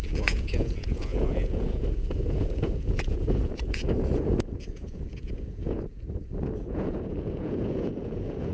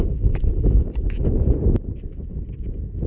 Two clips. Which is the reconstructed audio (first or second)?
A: first